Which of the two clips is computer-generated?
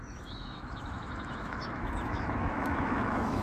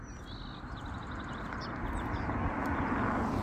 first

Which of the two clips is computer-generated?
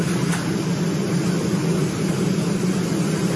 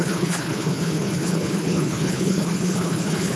second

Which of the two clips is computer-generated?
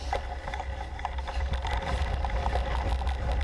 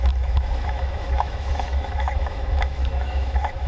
second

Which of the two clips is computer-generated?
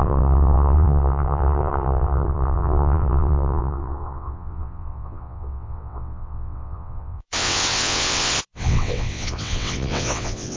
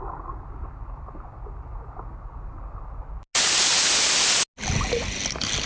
first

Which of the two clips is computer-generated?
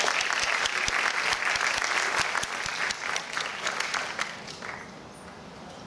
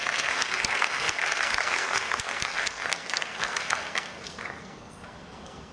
second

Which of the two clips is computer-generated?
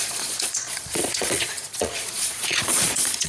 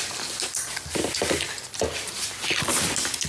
first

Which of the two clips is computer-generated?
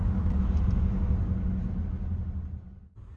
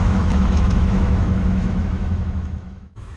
second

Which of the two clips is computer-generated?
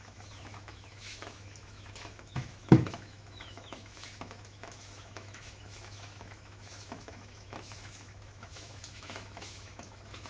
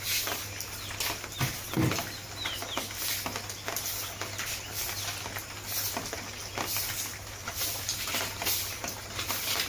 first